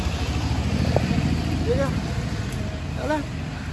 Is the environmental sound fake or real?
real